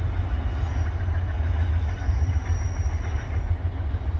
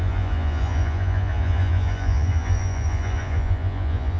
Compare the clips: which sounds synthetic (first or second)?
second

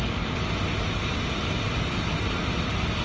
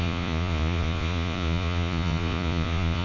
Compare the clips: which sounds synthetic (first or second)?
second